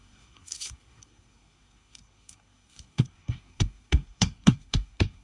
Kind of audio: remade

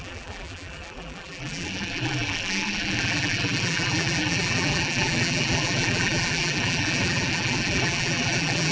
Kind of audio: remade